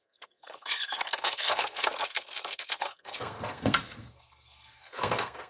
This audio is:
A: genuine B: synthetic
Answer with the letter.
B